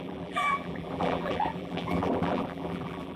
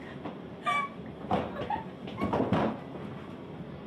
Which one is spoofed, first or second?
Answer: first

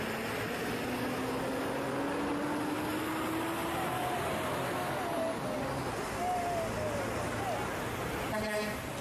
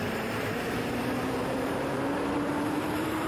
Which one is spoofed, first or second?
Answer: second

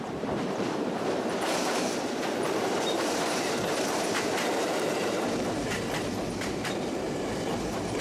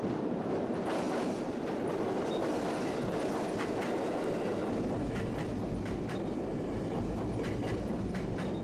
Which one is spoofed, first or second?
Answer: first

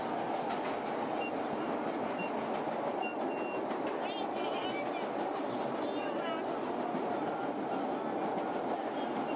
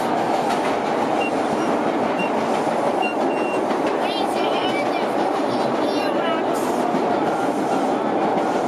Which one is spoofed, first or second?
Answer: second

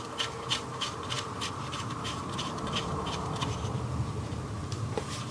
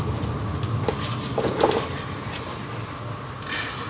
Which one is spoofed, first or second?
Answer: first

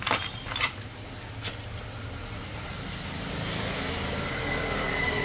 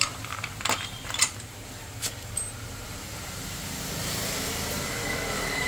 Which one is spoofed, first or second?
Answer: second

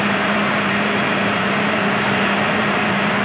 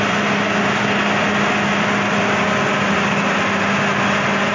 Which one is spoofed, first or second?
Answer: first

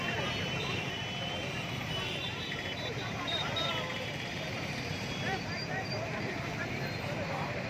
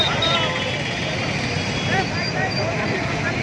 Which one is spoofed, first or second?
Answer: first